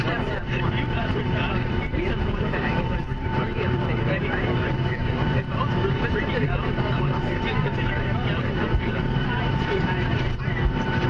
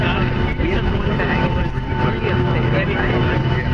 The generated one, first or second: first